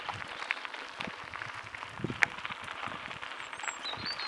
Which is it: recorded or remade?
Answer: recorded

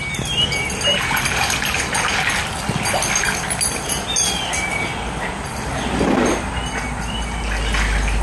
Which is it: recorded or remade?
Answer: recorded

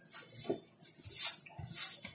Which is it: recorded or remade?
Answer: recorded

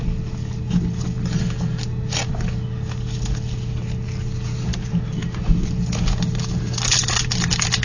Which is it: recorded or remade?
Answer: recorded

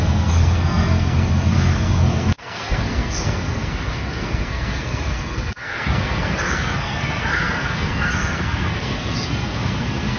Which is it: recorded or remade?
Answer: remade